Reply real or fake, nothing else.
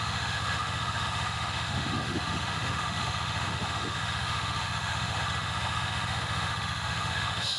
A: fake